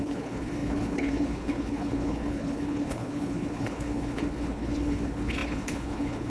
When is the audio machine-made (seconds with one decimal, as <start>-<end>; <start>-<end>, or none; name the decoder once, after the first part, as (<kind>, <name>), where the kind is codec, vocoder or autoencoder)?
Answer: 0.0-6.3 (codec, HILCodec)